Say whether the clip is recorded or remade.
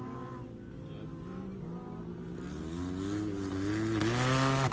recorded